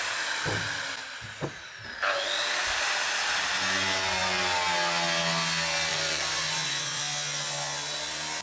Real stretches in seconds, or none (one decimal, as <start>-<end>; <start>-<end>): 0.0-5.9; 7.0-8.4